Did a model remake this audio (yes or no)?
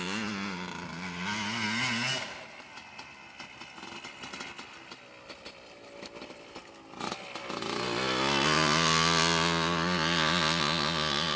no